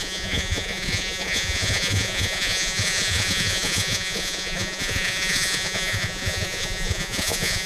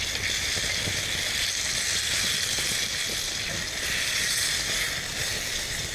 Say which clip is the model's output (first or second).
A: first